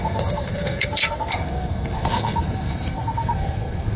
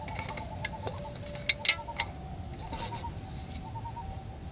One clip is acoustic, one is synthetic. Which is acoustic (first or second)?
second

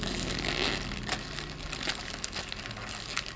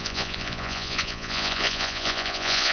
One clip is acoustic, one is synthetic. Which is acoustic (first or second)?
first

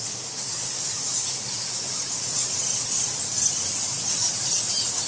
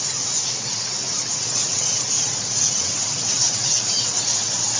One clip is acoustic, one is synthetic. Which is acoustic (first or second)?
first